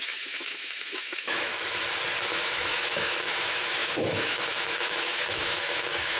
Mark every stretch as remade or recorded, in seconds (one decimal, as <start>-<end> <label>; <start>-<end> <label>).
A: 0.0-1.5 remade; 1.5-2.3 recorded; 2.3-6.2 remade